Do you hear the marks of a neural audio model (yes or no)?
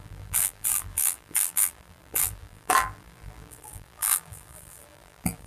yes